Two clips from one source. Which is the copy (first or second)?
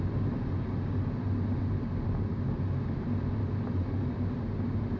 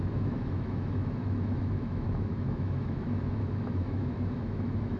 second